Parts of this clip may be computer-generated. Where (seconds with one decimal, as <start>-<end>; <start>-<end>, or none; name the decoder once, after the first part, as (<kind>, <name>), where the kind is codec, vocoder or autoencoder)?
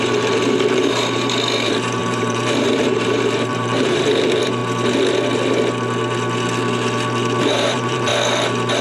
0.0-4.6 (vocoder, BigVGAN v2); 7.4-8.1